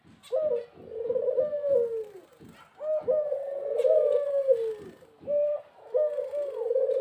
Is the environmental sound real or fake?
real